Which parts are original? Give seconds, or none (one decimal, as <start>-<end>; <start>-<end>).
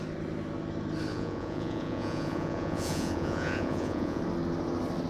0.0-1.1; 4.2-5.1